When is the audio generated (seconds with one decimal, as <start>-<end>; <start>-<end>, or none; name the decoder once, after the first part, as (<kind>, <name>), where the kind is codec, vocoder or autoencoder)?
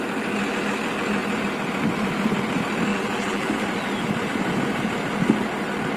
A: 2.9-3.5 (vocoder, BigVGAN v2)